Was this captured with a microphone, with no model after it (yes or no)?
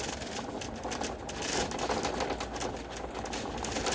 yes